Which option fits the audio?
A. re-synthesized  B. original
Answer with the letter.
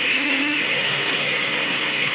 A